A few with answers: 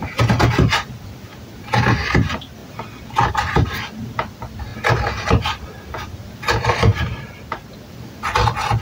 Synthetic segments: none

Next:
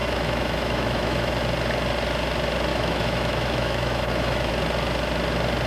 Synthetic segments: 0.0-1.3 (autoencoder, DAC-VAE); 2.7-4.5

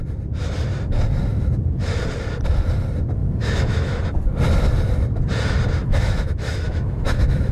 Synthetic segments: 3.2-4.0 (autoencoder, DAC-VAE); 5.8-7.5

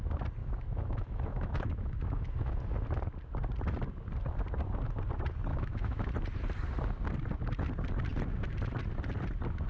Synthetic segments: 0.4-2.6 (autoencoder, DAC-VAE); 5.5-6.1

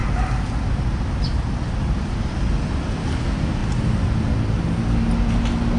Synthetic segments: none